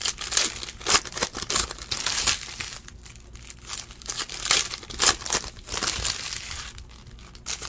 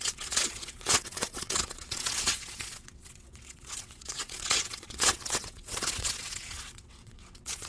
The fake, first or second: second